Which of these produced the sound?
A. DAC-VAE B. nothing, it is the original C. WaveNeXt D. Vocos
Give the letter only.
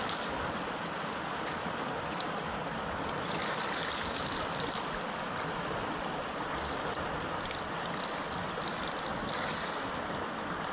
B